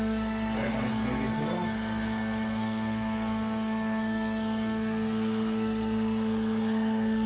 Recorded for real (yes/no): no